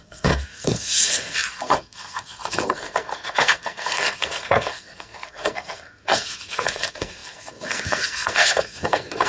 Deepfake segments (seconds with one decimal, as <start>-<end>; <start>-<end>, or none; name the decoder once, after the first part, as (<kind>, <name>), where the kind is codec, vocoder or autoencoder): 0.0-9.3 (codec, SNAC)